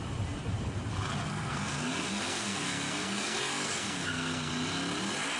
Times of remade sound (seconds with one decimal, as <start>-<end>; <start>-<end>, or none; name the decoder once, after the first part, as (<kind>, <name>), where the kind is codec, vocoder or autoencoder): 1.3-4.5 (codec, SNAC)